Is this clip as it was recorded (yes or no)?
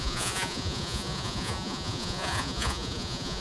no